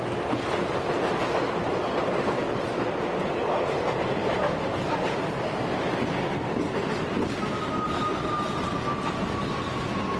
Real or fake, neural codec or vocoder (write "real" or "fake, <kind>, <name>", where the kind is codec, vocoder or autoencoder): real